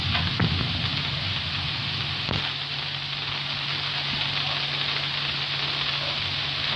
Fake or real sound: real